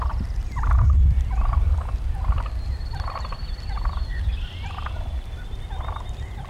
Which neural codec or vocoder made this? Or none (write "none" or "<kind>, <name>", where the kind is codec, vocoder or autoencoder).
none